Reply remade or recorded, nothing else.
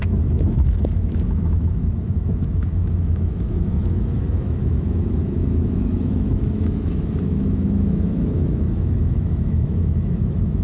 remade